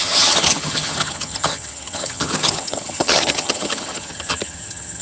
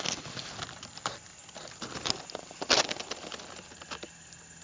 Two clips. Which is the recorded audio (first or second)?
second